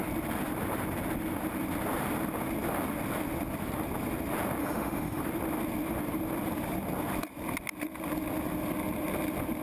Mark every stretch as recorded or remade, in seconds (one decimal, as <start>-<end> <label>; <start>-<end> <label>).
0.0-4.6 recorded; 4.6-5.2 remade; 5.2-9.6 recorded